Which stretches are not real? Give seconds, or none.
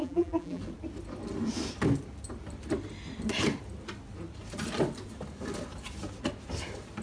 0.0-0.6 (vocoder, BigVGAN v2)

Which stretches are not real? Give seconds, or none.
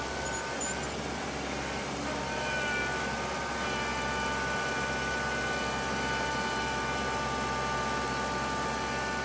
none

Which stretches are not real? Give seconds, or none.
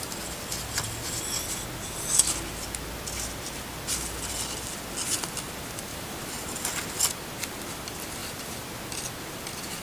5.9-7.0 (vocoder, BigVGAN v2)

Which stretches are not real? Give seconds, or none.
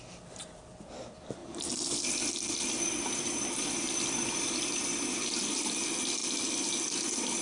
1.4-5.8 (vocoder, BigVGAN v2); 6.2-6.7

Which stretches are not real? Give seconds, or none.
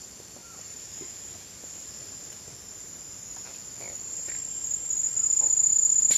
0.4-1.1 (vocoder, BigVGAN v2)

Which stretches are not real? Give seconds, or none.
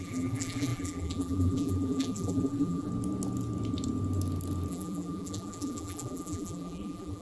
0.0-2.9 (vocoder, BigVGAN v2); 4.7-7.2